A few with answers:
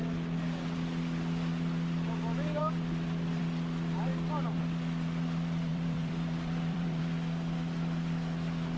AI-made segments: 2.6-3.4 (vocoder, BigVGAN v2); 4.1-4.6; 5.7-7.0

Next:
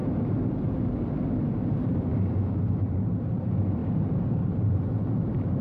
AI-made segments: 1.7-2.1 (vocoder, BigVGAN v2); 2.7-5.6

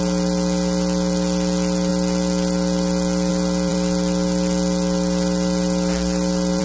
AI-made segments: none

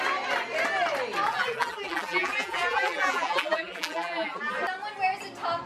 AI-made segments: 1.3-4.5 (vocoder, BigVGAN v2)

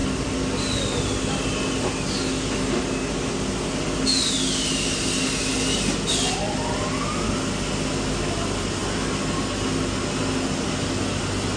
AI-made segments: none

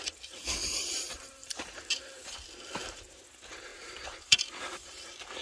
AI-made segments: 0.6-1.8 (vocoder, BigVGAN v2); 3.7-4.6